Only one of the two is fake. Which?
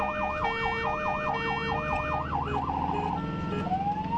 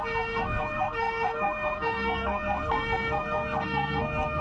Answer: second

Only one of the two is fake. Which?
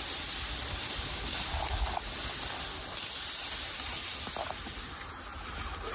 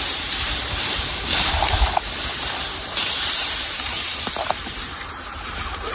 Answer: second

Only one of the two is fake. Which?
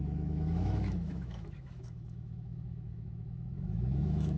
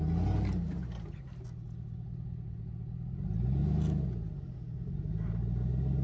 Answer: first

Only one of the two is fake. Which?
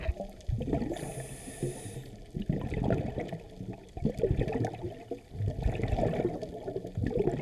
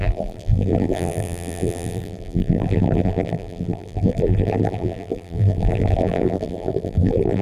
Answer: second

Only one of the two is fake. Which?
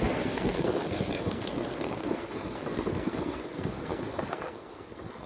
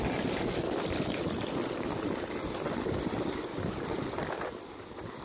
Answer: first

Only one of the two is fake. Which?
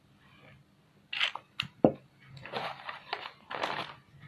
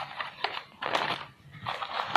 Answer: second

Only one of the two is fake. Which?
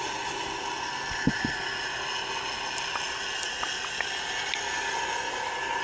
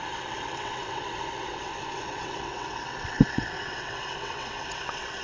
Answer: second